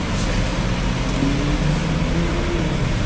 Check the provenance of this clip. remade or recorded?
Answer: recorded